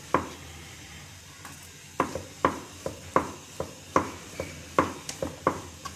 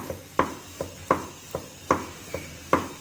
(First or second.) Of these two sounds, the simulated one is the first